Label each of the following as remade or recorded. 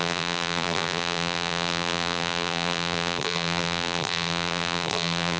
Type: remade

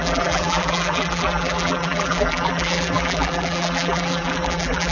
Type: remade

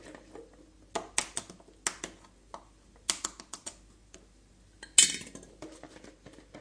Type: recorded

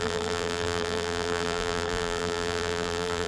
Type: remade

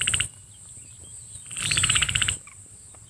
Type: remade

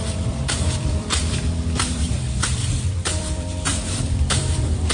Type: remade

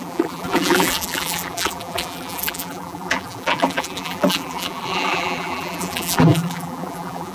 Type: remade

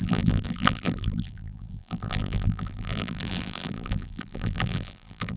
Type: remade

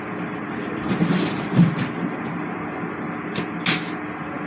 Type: recorded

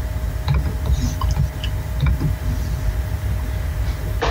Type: remade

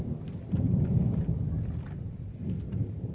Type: remade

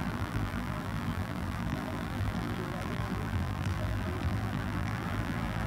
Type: remade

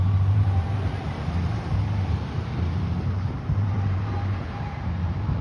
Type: remade